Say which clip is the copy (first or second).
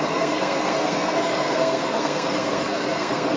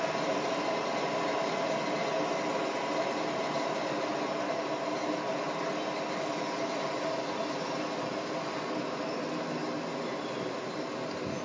first